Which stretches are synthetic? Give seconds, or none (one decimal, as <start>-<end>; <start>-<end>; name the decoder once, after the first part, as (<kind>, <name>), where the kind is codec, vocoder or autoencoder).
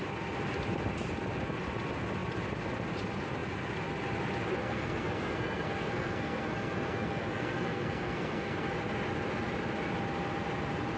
4.6-8.7 (codec, SNAC)